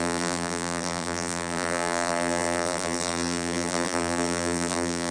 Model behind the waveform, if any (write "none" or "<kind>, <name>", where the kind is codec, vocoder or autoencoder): vocoder, BigVGAN v2